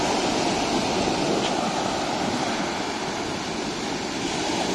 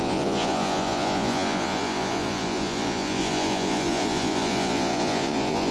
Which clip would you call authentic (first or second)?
first